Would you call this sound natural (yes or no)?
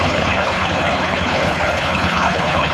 no